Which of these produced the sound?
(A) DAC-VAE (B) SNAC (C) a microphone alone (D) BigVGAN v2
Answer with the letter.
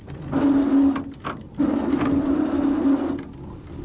C